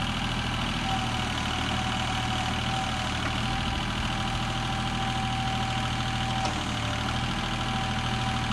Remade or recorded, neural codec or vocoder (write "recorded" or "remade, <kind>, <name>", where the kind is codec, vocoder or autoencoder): recorded